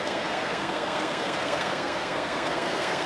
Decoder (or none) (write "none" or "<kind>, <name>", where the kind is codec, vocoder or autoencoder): codec, SNAC